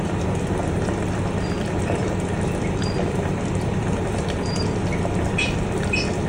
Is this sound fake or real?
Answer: fake